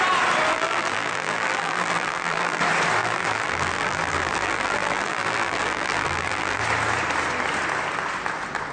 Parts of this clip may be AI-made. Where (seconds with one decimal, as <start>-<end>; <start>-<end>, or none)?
0.5-2.6; 3.0-6.6

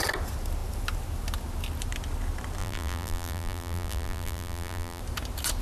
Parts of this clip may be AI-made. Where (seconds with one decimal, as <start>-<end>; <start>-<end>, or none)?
2.6-5.0

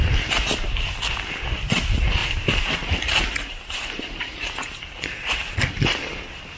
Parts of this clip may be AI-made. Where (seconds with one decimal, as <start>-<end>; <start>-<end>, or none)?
2.2-5.6

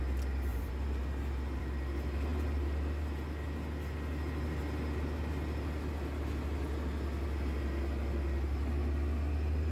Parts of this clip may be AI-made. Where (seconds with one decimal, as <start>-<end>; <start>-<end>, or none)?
0.5-1.6

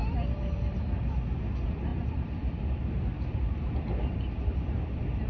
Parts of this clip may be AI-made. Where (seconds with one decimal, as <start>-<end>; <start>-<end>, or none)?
0.0-0.6; 1.9-5.3